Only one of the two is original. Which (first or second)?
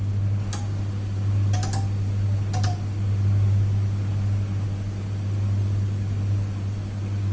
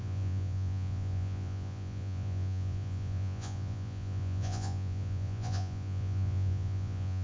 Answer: first